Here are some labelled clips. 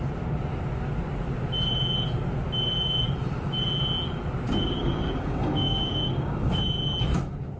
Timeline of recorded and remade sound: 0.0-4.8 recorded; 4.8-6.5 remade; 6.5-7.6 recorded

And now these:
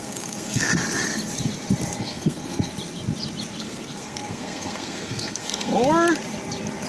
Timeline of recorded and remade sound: 0.0-0.7 remade; 0.7-2.0 recorded; 2.0-2.7 remade; 2.7-3.6 recorded; 3.6-5.7 remade; 5.7-6.9 recorded

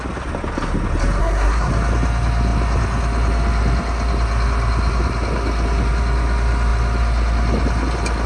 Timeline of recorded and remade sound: 0.0-1.2 recorded; 1.2-1.7 remade; 1.7-8.3 recorded

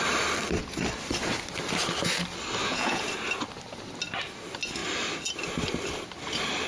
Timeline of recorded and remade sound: 0.0-2.6 recorded; 2.6-3.1 remade; 3.1-6.7 recorded